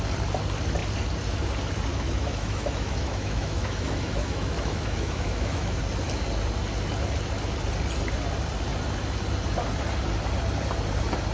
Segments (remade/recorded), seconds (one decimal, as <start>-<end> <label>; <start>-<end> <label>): 0.0-1.9 recorded; 1.9-5.8 remade; 5.8-11.3 recorded